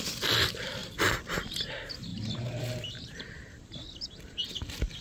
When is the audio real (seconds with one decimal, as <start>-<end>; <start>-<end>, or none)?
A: 0.0-2.1; 4.5-5.0